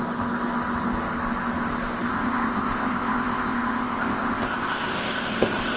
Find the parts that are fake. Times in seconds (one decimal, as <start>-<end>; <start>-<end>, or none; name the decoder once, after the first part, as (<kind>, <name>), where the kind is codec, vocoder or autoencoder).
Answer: 2.1-5.8 (codec, ZipCodec)